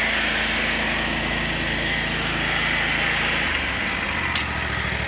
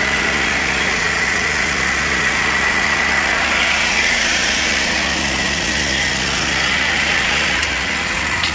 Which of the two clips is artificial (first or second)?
second